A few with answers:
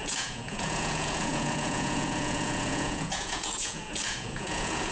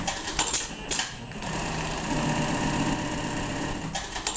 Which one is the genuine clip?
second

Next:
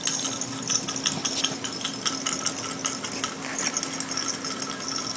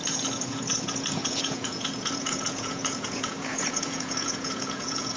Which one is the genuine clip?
first